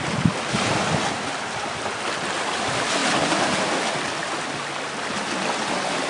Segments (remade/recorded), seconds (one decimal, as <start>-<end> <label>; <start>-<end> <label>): 0.0-3.0 remade; 3.0-6.1 recorded